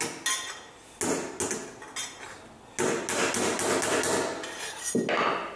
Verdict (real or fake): real